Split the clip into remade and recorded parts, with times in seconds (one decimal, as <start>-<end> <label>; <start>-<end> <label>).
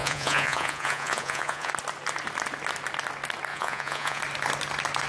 0.0-1.7 remade; 1.7-3.5 recorded; 3.5-4.2 remade; 4.2-5.1 recorded